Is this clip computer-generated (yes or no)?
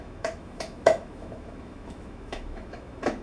yes